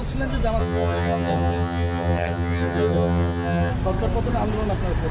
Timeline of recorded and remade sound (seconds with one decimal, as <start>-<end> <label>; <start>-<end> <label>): 0.0-0.6 recorded; 0.6-3.7 remade; 3.7-5.1 recorded